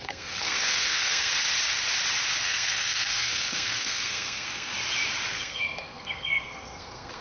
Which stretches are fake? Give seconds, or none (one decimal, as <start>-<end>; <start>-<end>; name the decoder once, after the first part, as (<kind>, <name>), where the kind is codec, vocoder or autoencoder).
0.0-1.3 (codec, SNAC); 2.4-4.7; 5.3-7.2